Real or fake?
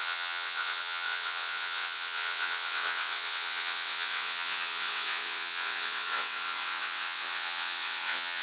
fake